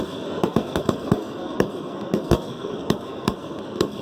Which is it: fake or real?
fake